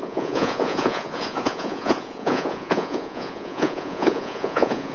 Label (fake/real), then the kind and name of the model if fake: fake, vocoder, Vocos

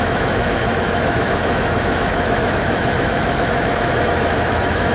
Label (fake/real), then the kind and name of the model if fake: fake, autoencoder, DAC-VAE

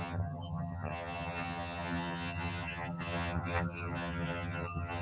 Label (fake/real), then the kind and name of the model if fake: fake, vocoder, HiFi-GAN